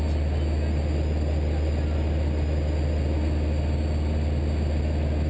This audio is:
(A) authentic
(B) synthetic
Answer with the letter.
A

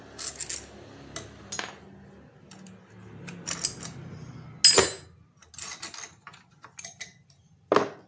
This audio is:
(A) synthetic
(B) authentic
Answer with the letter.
B